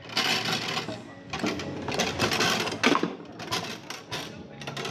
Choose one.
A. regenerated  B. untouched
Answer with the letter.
B